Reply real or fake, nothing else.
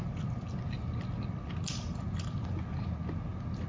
real